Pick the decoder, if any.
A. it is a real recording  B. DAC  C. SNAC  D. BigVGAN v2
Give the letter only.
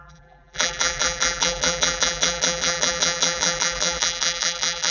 D